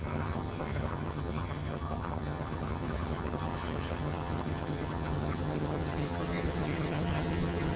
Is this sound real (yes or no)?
no